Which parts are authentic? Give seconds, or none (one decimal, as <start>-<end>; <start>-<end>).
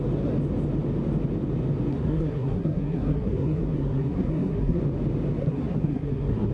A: 0.0-1.9; 4.8-5.4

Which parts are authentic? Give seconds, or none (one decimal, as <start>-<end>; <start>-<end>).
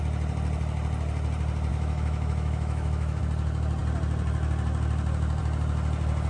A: 0.0-1.7; 3.2-6.3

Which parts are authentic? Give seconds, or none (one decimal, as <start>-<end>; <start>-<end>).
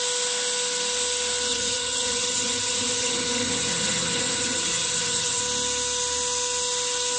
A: 0.0-1.5; 5.4-7.2